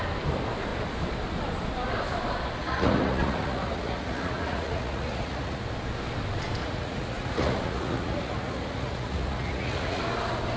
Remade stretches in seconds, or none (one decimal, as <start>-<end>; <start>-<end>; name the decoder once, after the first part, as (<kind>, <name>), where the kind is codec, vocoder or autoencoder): 2.6-5.6 (vocoder, Vocos); 6.6-10.0

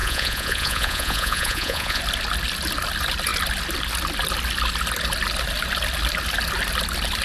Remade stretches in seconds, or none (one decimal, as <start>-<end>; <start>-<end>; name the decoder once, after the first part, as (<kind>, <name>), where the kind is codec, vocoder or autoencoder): 0.0-2.0 (vocoder, Vocos)

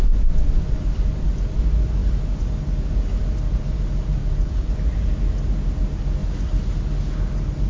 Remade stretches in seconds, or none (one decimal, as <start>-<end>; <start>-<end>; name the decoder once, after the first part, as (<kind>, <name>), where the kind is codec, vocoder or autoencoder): 4.2-4.7 (vocoder, Vocos)